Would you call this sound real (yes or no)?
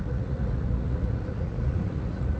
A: no